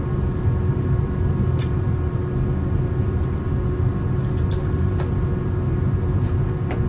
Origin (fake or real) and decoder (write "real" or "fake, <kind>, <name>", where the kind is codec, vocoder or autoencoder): real